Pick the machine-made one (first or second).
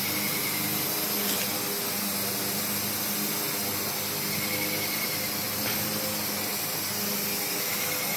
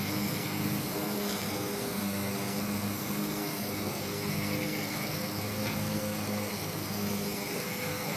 second